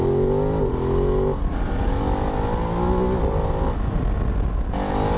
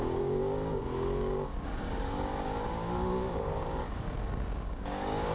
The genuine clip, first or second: first